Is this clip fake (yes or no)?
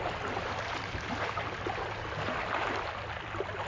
no